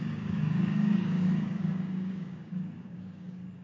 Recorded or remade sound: remade